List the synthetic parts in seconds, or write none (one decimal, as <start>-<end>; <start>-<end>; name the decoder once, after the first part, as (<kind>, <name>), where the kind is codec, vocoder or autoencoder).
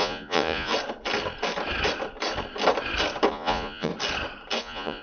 0.0-0.7 (vocoder, Vocos); 3.3-3.9; 4.6-5.0